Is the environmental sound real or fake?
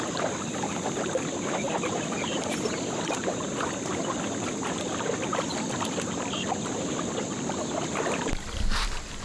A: real